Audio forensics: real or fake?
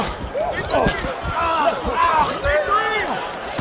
real